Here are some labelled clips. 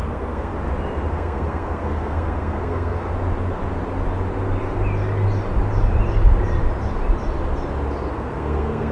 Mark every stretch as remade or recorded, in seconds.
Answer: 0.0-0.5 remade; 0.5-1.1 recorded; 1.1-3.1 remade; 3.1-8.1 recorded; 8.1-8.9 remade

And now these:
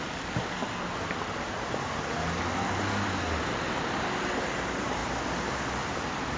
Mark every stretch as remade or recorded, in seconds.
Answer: 0.0-6.4 recorded

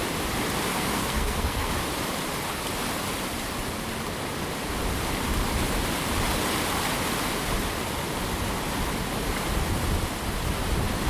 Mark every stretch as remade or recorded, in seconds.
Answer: 0.0-0.7 recorded; 0.7-1.7 remade; 1.7-11.1 recorded

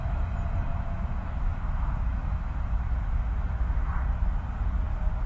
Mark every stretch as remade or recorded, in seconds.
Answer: 0.0-0.7 recorded; 0.7-3.9 remade; 3.9-5.3 recorded

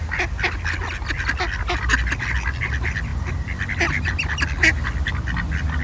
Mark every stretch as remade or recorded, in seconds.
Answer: 0.0-5.8 recorded

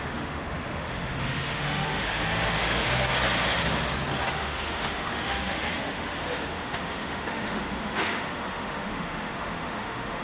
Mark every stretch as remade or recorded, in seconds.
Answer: 0.0-3.1 remade; 3.1-4.3 recorded; 4.3-10.2 remade